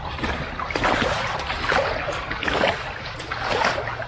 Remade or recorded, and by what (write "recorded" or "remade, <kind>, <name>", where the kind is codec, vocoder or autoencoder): recorded